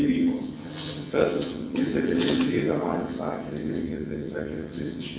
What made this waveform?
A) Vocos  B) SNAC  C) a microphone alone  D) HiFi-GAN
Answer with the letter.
D